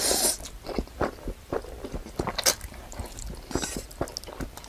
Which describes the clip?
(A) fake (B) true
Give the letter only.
B